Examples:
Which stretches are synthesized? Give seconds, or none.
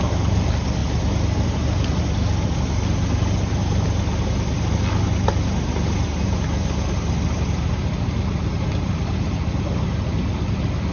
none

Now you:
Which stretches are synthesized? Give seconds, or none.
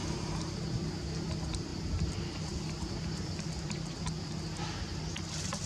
1.7-5.1 (vocoder, BigVGAN v2)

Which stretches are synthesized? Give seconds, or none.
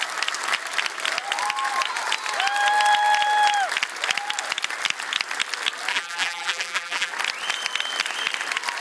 5.9-7.1 (vocoder, BigVGAN v2)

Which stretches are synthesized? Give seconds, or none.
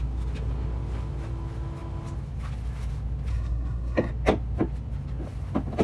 3.3-4.1 (codec, SNAC)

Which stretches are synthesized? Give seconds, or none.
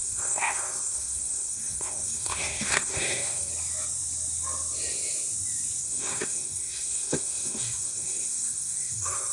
0.0-3.5 (codec, SNAC); 5.8-9.3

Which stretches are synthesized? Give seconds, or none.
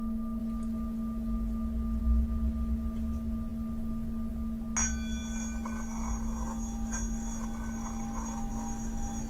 none